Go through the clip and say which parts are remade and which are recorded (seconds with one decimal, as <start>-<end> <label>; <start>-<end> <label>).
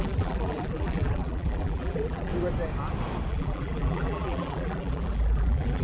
0.0-2.3 remade; 2.3-3.3 recorded; 3.3-5.8 remade